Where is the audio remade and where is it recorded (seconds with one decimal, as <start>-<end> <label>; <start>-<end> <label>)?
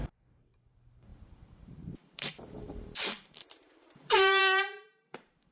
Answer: 0.0-5.5 remade